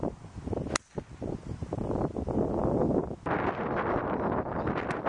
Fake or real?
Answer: real